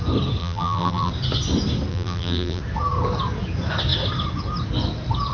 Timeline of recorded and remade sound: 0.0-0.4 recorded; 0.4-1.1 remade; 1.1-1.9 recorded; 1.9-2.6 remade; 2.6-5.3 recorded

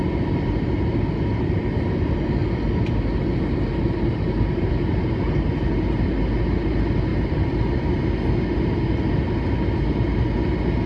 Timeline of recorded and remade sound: 0.0-7.1 recorded; 7.1-8.0 remade; 8.0-10.9 recorded

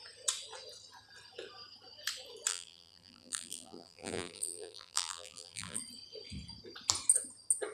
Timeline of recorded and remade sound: 0.0-2.5 recorded; 2.5-5.8 remade; 5.8-7.7 recorded

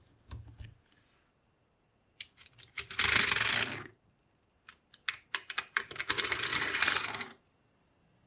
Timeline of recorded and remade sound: 0.0-8.3 recorded

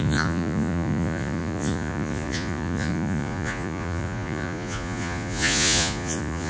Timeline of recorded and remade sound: 0.0-6.5 remade

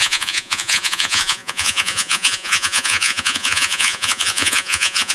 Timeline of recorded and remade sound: 0.0-5.1 remade

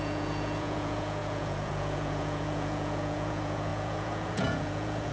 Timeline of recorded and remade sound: 0.0-5.1 remade